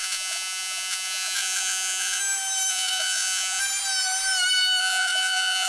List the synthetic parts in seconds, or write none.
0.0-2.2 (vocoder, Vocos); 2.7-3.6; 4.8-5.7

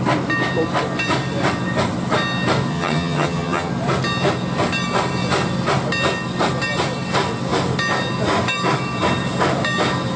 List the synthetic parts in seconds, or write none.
2.7-3.7 (vocoder, HiFi-GAN)

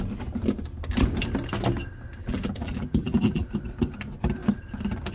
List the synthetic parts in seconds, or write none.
2.2-3.5 (vocoder, BigVGAN v2)

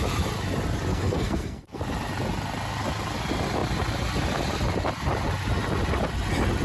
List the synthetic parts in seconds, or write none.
0.9-1.8 (codec, SNAC)

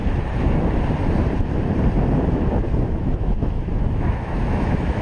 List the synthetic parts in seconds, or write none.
2.3-5.0 (autoencoder, DAC-VAE)

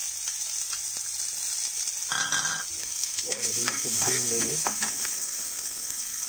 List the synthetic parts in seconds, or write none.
2.8-6.3 (codec, SNAC)

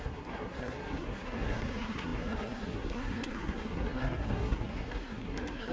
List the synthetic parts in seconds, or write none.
0.0-5.7 (codec, SNAC)